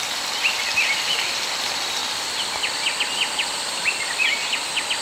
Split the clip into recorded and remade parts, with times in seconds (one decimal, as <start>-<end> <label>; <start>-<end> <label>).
0.0-5.0 recorded